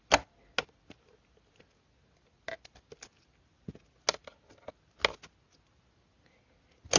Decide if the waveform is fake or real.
real